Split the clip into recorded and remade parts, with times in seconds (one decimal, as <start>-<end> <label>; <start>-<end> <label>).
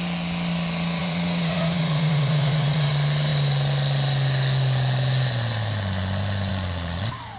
0.0-1.0 recorded; 1.0-2.9 remade; 2.9-7.4 recorded